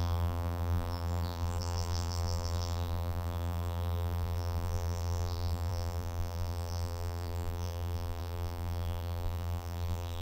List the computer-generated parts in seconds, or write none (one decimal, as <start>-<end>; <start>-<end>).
0.0-10.2